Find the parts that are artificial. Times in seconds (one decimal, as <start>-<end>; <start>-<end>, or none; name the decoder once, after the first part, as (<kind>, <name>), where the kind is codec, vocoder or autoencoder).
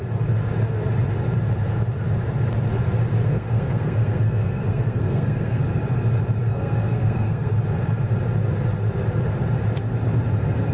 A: 3.2-5.6 (codec, SNAC); 6.4-7.5